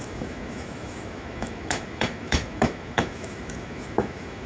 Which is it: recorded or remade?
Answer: remade